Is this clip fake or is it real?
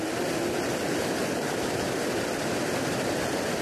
real